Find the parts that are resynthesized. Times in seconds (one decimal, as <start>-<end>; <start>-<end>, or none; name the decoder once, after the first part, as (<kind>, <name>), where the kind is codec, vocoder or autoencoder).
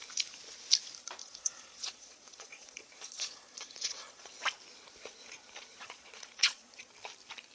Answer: 1.2-4.3 (vocoder, Vocos); 5.7-6.9